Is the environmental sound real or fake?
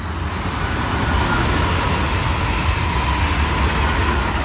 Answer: real